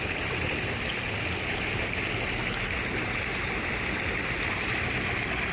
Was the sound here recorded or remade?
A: recorded